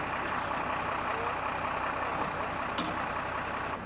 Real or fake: real